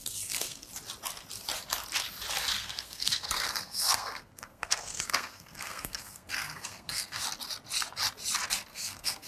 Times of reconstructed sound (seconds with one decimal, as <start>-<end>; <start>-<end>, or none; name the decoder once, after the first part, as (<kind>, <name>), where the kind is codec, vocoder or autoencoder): 0.0-0.7 (codec, SNAC); 2.6-7.2; 8.7-9.3